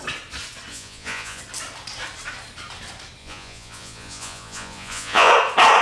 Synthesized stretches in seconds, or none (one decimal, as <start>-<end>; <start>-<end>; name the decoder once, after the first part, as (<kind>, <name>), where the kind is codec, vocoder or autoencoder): 0.7-1.4 (vocoder, Vocos); 3.2-5.3

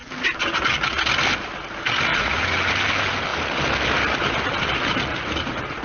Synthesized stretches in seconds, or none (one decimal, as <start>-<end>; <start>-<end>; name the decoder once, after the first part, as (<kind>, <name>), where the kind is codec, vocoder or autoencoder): 2.1-2.7 (vocoder, Vocos); 5.1-5.8

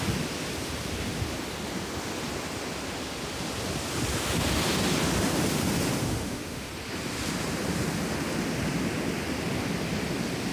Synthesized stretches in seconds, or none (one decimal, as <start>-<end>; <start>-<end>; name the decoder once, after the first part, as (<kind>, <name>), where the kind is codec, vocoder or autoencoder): 6.0-6.7 (autoencoder, DAC-VAE)